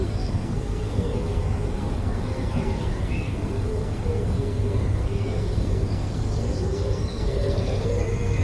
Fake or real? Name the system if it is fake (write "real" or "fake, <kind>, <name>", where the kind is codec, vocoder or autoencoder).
fake, codec, SNAC